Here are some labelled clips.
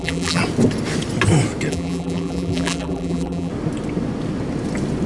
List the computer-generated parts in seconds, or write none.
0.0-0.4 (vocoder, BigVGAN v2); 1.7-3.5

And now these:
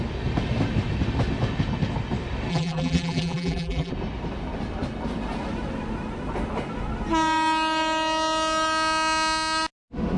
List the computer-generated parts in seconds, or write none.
2.5-3.9 (vocoder, BigVGAN v2)

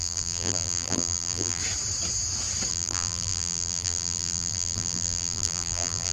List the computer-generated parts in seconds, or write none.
0.0-1.6 (vocoder, BigVGAN v2); 2.7-6.1

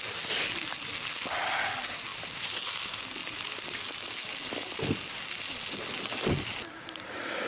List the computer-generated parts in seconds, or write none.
2.1-2.6 (vocoder, BigVGAN v2); 3.2-5.0

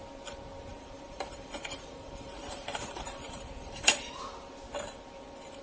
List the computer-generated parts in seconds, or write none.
0.7-4.1 (vocoder, BigVGAN v2)

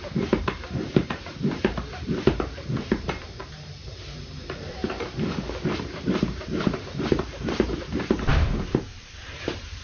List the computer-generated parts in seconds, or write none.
0.0-4.8 (vocoder, BigVGAN v2); 5.8-8.3; 9.4-9.8

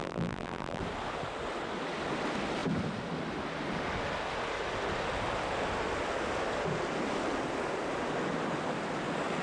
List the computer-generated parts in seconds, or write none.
0.0-0.8 (vocoder, BigVGAN v2)